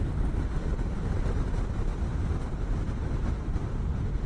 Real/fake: real